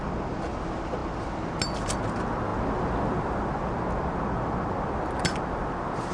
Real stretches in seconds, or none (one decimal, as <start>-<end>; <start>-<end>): 0.0-6.1